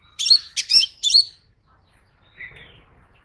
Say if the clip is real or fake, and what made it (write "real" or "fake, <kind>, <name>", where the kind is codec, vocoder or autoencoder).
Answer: fake, vocoder, BigVGAN v2